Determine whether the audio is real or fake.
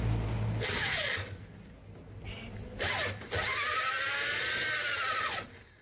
real